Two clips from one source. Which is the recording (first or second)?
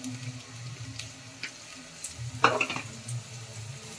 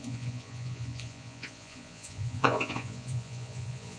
first